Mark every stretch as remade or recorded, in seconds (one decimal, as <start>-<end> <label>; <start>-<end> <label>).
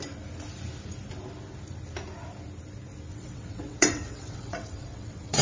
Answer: 0.0-3.1 recorded; 3.1-5.4 remade